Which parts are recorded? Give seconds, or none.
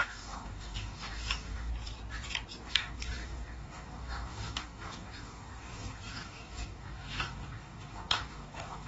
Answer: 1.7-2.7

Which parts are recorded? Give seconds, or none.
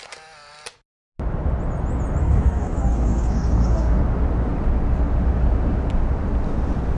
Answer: 0.0-2.2; 4.0-7.0